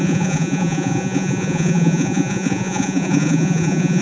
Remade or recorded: remade